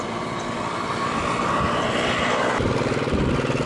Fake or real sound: real